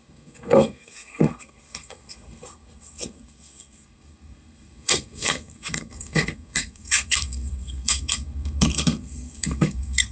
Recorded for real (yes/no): no